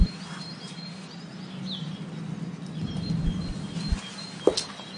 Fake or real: real